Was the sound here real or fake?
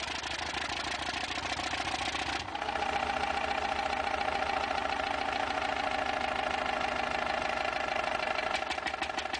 real